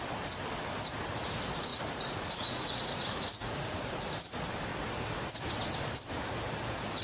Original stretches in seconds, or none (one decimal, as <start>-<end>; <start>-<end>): 0.0-1.7; 4.1-7.0